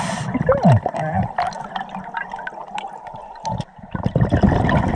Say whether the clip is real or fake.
real